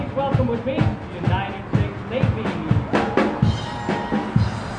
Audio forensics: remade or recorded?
recorded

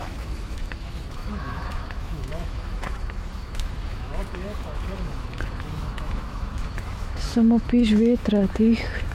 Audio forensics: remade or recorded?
remade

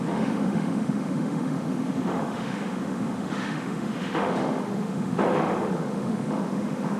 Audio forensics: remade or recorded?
remade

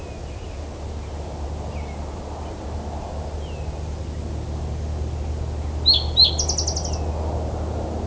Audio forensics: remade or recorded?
recorded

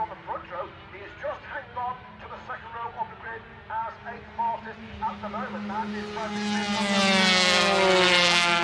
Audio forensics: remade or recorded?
recorded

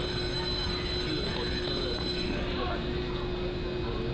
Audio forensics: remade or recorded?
recorded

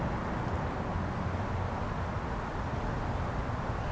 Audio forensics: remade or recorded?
recorded